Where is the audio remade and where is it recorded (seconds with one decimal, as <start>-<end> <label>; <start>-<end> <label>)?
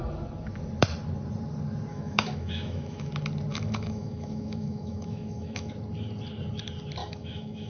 0.0-1.9 recorded; 1.9-3.1 remade; 3.1-3.5 recorded; 3.5-5.7 remade; 5.7-7.0 recorded; 7.0-7.7 remade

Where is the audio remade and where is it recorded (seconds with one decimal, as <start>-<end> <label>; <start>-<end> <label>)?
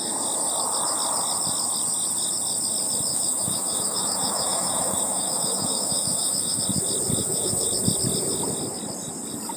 0.0-3.1 recorded; 3.1-6.6 remade; 6.6-7.2 recorded; 7.2-7.7 remade; 7.7-9.6 recorded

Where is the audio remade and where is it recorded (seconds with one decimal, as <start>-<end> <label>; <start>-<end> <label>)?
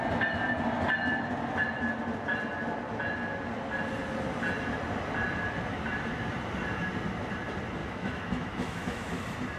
0.0-7.8 recorded; 7.8-9.1 remade; 9.1-9.6 recorded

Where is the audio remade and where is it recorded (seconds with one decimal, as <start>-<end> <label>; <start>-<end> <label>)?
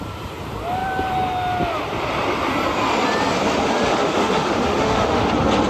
0.0-3.9 recorded; 3.9-5.3 remade; 5.3-5.7 recorded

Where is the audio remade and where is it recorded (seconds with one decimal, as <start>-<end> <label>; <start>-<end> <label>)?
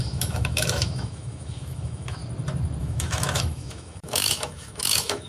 0.0-2.2 remade; 2.2-2.8 recorded; 2.8-5.3 remade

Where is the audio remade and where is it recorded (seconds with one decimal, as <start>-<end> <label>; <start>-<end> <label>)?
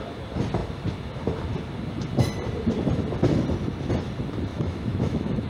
0.0-4.5 recorded; 4.5-5.5 remade